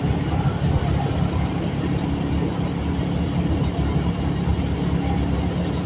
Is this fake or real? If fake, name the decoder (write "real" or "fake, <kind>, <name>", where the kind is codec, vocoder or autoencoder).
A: real